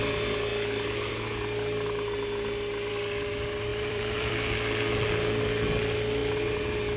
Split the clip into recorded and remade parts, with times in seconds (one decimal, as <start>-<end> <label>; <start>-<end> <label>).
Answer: 0.0-3.7 recorded; 3.7-4.3 remade; 4.3-7.0 recorded